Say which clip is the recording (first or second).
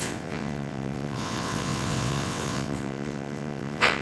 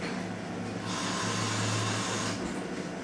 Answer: second